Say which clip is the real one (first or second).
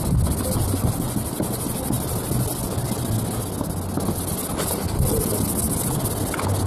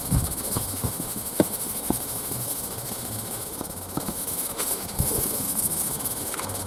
first